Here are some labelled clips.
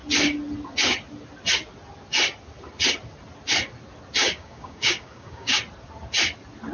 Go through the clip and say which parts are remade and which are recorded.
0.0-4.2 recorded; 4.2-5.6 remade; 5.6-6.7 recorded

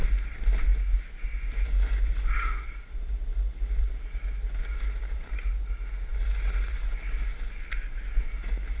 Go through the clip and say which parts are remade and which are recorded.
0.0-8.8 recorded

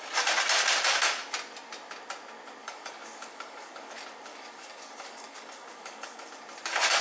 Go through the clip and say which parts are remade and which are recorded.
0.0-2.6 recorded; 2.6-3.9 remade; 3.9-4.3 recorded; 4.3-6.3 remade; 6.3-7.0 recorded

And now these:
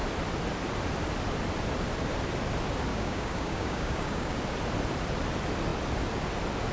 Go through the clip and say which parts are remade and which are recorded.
0.0-2.9 recorded; 2.9-4.4 remade; 4.4-6.7 recorded